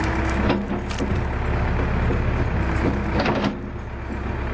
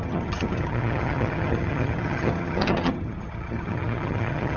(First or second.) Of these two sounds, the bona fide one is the first